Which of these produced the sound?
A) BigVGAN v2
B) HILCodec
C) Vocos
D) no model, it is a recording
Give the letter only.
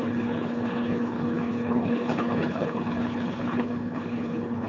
B